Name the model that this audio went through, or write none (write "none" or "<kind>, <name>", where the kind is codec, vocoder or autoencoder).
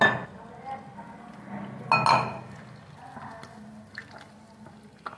none